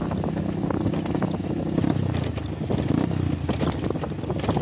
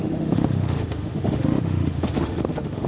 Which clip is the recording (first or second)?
first